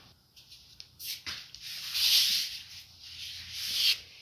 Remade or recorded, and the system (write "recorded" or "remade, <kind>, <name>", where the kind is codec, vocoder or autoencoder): recorded